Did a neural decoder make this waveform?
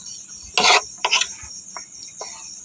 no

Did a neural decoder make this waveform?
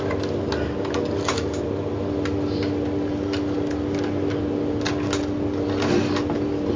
no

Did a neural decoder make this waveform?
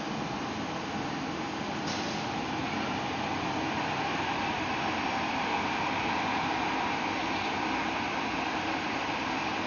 no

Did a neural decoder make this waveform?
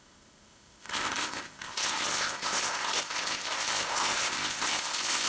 yes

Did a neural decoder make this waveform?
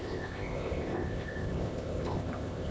yes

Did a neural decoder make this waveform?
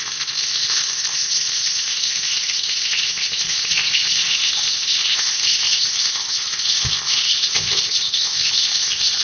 yes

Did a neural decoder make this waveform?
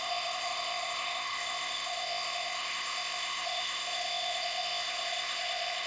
yes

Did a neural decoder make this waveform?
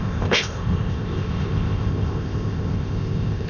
yes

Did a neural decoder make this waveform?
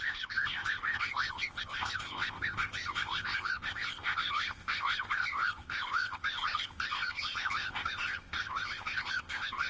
yes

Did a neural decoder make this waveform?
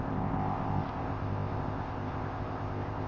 yes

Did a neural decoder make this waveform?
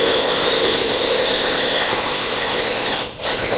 yes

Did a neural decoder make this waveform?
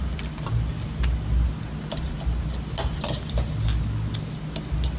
no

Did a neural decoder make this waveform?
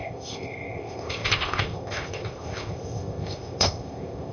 yes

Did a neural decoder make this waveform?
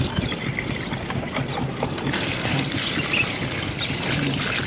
no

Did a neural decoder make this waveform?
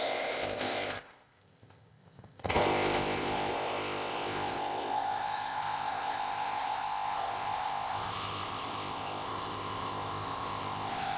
yes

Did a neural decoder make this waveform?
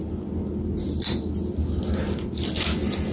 no